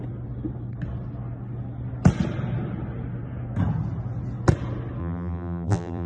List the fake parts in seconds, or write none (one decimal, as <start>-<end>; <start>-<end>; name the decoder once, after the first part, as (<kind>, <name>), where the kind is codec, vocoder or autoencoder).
5.0-6.1 (vocoder, BigVGAN v2)